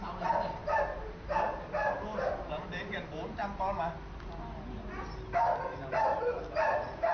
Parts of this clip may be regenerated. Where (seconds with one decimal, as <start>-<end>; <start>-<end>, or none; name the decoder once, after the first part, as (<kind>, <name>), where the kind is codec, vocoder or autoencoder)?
0.0-3.4 (vocoder, BigVGAN v2); 5.9-7.1